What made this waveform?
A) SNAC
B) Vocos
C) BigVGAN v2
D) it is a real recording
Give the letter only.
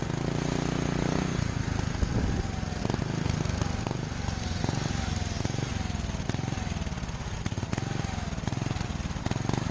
D